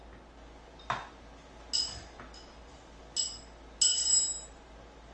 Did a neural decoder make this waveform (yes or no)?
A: no